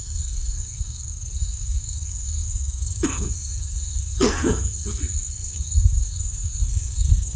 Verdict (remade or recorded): remade